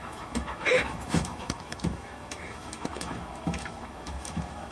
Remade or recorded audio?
remade